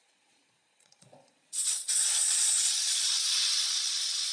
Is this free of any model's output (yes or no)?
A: no